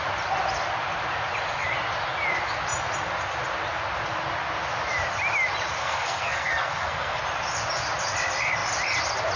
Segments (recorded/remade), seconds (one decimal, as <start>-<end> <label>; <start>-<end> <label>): 0.0-5.8 recorded; 5.8-7.2 remade; 7.2-9.4 recorded